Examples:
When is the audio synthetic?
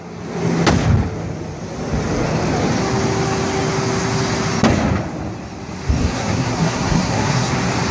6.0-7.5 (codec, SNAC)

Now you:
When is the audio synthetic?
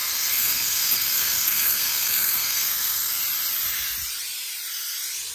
0.0-3.2 (codec, SNAC)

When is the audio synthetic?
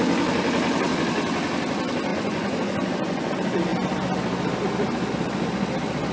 2.1-3.3 (vocoder, Vocos)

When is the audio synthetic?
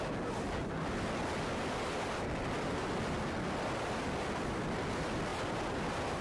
none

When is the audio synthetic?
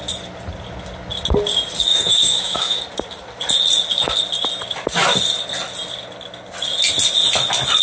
1.9-2.8 (autoencoder, DAC-VAE)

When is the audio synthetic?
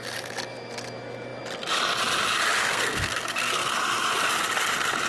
2.6-3.7 (codec, SNAC)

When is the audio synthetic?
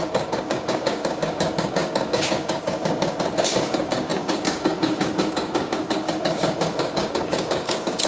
0.0-8.1 (codec, DAC)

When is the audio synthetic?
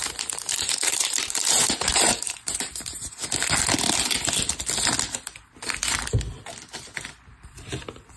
0.0-3.2 (vocoder, BigVGAN v2)